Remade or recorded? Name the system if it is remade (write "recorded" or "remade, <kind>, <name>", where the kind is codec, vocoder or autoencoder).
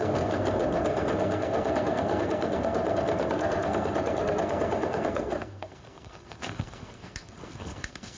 remade, codec, SNAC